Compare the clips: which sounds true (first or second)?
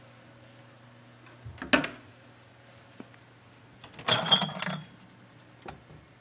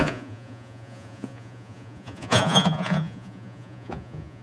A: first